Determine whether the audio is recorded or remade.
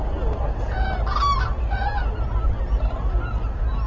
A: recorded